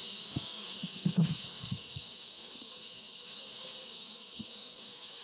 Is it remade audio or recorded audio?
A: remade